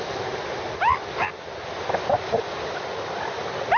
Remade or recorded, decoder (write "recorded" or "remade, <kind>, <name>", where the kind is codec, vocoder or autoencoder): recorded